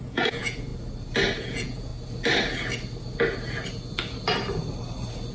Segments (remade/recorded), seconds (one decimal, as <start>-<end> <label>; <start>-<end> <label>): 0.0-0.7 remade; 0.7-1.4 recorded; 1.4-1.9 remade; 1.9-5.3 recorded